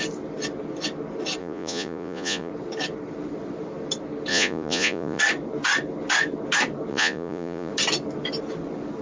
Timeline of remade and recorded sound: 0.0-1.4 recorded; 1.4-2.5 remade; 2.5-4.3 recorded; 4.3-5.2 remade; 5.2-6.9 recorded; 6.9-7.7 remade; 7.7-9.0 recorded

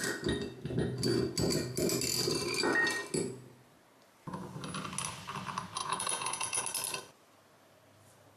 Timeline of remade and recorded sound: 0.0-5.8 recorded; 5.8-6.6 remade; 6.6-8.4 recorded

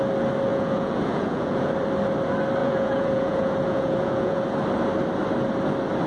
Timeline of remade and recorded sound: 0.0-0.5 recorded; 0.5-1.7 remade; 1.7-2.6 recorded; 2.6-4.4 remade; 4.4-6.1 recorded

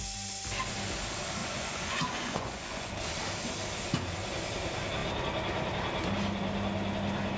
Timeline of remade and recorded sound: 0.0-1.4 recorded; 1.4-2.9 remade; 2.9-7.4 recorded